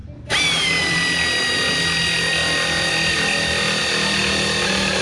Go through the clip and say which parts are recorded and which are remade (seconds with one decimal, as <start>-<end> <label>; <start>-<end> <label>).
0.0-5.0 recorded